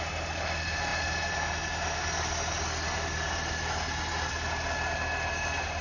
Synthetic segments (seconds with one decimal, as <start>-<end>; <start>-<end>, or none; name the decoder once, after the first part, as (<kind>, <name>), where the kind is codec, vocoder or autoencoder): none